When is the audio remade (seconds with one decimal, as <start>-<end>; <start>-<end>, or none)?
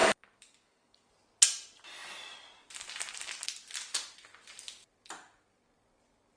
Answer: 0.0-1.1